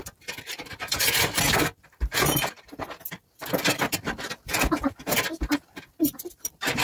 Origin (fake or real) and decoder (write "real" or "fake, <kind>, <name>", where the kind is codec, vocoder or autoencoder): fake, vocoder, BigVGAN v2